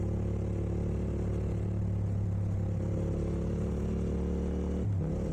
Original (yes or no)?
yes